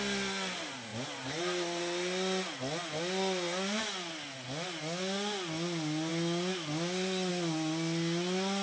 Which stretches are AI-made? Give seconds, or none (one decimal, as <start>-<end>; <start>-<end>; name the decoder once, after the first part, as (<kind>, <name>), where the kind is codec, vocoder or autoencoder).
0.9-1.8 (vocoder, BigVGAN v2)